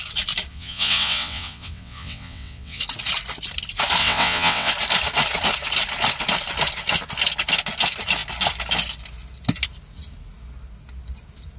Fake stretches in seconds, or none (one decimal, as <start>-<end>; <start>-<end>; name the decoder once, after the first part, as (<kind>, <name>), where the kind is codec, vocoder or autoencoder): 0.5-2.8 (vocoder, WaveNeXt); 4.0-4.7